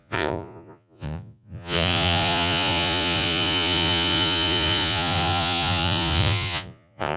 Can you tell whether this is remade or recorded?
remade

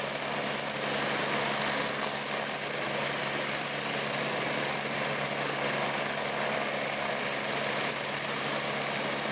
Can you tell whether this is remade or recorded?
recorded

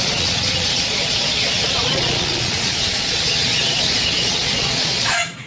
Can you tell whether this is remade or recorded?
remade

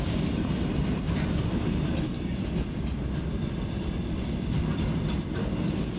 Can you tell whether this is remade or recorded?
recorded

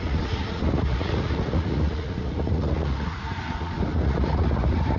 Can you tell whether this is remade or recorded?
remade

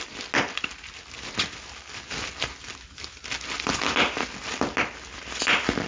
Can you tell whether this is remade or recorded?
recorded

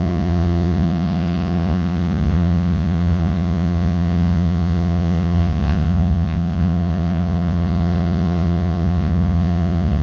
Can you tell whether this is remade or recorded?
remade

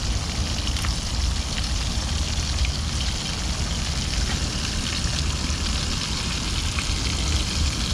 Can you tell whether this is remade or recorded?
recorded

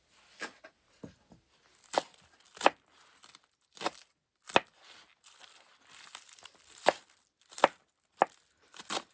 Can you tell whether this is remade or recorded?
recorded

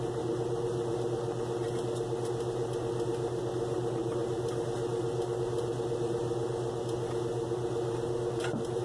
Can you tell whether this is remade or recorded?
recorded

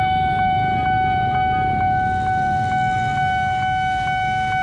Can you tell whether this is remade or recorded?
recorded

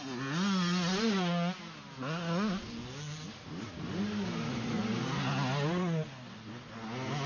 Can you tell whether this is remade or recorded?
recorded